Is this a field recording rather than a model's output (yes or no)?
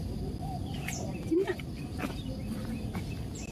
yes